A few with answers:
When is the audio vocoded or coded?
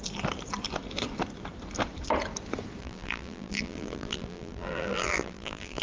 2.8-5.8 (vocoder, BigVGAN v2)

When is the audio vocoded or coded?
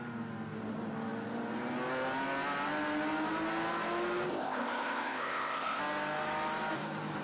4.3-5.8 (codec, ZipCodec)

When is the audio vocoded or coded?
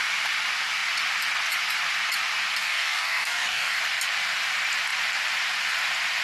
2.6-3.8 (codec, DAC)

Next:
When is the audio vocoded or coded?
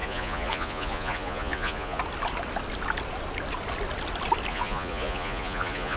0.0-2.0 (vocoder, Vocos); 4.5-6.0